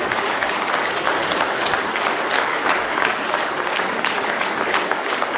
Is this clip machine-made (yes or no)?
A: yes